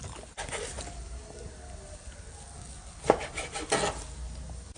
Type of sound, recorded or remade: recorded